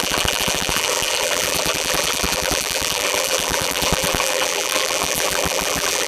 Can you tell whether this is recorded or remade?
remade